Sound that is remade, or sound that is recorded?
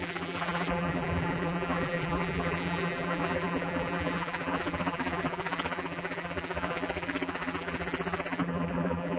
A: remade